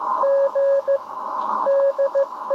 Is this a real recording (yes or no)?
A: no